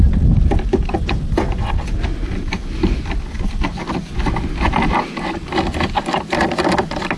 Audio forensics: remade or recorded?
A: recorded